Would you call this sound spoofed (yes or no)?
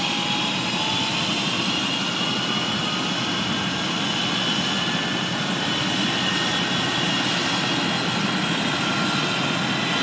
no